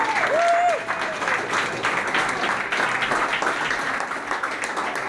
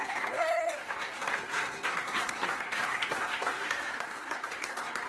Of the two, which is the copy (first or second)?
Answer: second